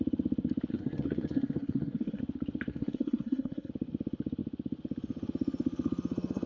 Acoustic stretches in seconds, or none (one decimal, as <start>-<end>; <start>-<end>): 0.0-0.7; 2.2-2.7; 3.7-6.5